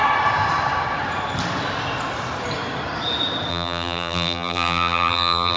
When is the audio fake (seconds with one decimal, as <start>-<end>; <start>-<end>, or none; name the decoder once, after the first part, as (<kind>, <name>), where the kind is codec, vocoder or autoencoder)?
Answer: 3.5-5.6 (vocoder, BigVGAN v2)